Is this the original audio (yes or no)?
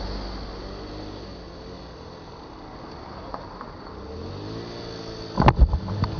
yes